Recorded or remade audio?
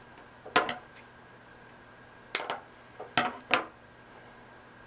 recorded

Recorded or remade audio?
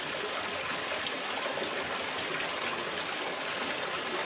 recorded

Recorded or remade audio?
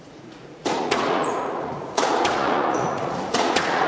remade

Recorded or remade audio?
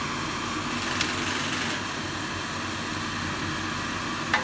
recorded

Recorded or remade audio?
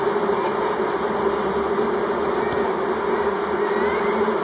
recorded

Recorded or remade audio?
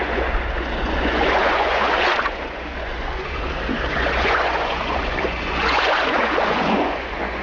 remade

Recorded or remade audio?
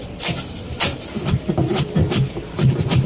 recorded